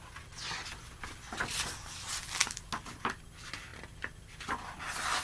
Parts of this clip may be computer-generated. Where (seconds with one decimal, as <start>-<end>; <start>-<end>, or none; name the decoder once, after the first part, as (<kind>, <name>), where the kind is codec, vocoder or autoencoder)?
3.7-4.3 (vocoder, BigVGAN v2)